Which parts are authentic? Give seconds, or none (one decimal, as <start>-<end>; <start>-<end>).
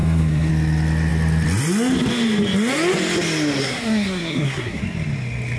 0.5-3.6; 4.8-5.6